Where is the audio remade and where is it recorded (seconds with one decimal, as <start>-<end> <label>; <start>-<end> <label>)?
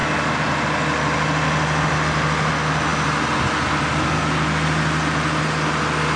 0.0-6.2 recorded